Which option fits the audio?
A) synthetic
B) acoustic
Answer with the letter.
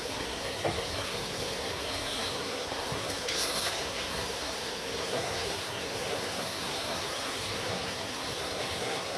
A